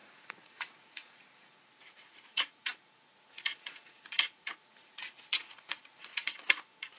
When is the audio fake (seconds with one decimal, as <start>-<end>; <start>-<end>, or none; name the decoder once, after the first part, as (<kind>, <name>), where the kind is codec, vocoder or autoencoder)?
0.0-7.0 (vocoder, Vocos)